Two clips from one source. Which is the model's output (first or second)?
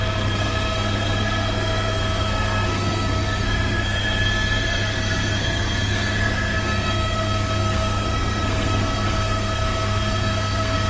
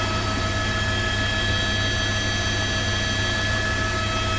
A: first